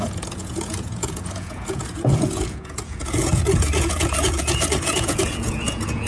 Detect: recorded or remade remade